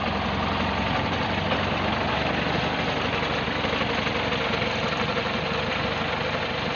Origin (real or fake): real